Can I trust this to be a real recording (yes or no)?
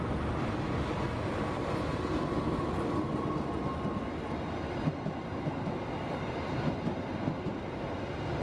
yes